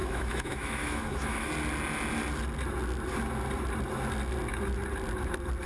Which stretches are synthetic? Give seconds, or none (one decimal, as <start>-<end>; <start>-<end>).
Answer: 0.0-1.5